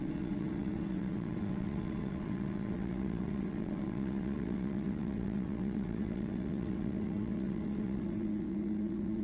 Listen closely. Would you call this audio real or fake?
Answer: fake